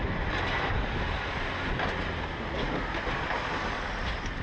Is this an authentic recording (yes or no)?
yes